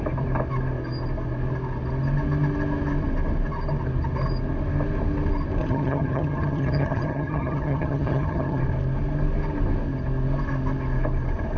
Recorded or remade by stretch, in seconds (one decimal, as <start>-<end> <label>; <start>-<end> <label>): 0.0-5.6 recorded; 5.6-8.6 remade; 8.6-11.6 recorded